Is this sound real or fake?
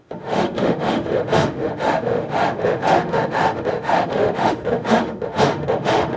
fake